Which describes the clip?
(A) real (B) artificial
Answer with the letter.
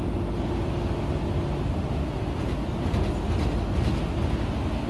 A